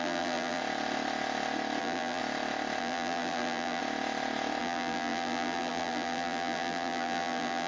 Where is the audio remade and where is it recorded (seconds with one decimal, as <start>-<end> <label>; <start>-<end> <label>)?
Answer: 0.0-0.6 remade; 0.6-1.8 recorded; 1.8-2.2 remade; 2.2-2.8 recorded; 2.8-3.8 remade; 3.8-4.6 recorded; 4.6-7.7 remade